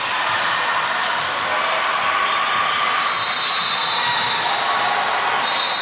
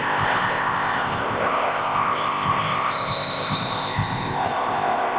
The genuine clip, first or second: first